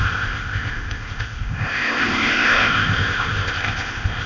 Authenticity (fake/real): fake